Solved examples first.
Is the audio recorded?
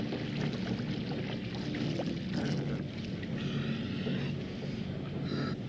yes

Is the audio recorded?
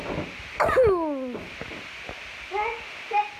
yes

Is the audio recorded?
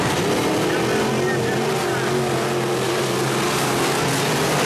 yes